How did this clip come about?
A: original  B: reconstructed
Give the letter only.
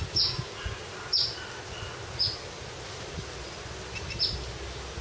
A